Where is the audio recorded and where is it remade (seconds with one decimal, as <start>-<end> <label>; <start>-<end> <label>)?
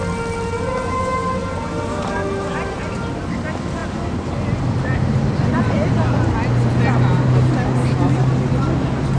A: 0.0-9.2 recorded